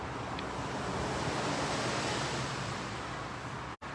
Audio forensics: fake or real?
real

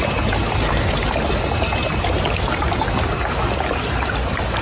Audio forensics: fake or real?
real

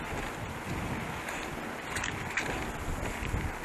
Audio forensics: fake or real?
real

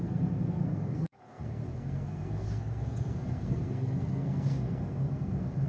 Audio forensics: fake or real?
fake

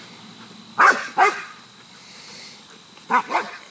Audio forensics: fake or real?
real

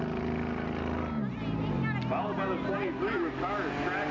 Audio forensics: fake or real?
real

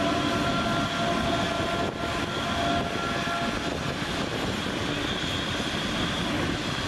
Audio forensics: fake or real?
real